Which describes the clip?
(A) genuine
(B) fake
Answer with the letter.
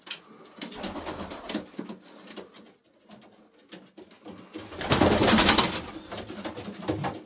A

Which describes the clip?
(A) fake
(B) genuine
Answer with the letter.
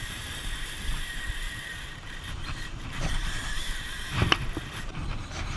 A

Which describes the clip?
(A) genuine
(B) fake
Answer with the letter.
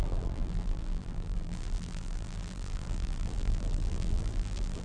B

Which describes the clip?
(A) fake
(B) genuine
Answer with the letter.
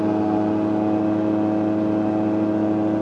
B